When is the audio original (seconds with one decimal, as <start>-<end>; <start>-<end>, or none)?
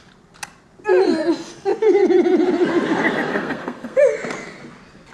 0.0-3.3; 4.0-5.1